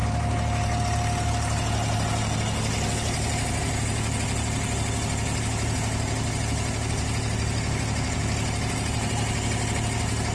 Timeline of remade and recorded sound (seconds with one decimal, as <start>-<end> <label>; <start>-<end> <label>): 0.0-10.3 recorded